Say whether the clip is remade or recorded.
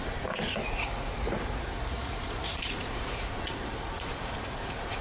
remade